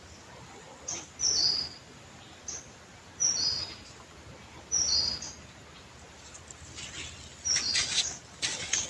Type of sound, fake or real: real